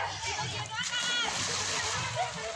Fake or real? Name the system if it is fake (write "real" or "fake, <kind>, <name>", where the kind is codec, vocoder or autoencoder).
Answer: real